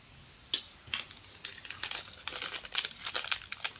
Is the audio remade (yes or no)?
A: no